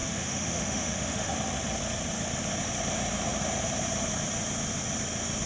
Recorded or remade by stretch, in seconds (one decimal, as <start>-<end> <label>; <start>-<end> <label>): 0.0-1.3 remade; 1.3-5.5 recorded

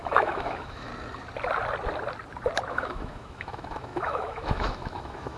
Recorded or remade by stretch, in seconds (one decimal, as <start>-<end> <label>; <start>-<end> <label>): 0.0-0.9 remade; 0.9-2.7 recorded; 2.7-5.4 remade

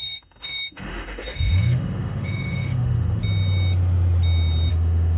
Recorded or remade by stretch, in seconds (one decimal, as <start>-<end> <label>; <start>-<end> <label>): 0.0-3.2 remade; 3.2-4.7 recorded; 4.7-5.2 remade

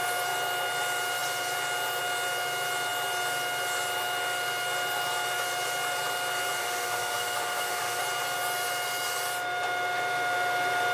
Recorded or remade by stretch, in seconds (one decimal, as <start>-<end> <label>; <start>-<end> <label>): 0.0-6.6 recorded; 6.6-8.0 remade; 8.0-10.9 recorded

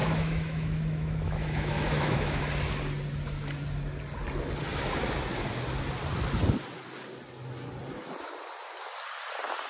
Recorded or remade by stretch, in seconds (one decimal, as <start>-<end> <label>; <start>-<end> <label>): 0.0-2.4 remade; 2.4-9.7 recorded

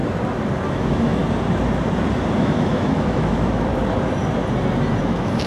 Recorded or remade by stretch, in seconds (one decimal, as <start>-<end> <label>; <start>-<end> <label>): 0.0-0.7 recorded; 0.7-1.2 remade; 1.2-2.4 recorded; 2.4-3.7 remade; 3.7-5.0 recorded; 5.0-5.5 remade

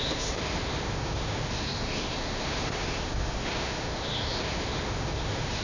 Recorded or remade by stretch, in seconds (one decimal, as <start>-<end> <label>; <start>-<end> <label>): 0.0-5.6 remade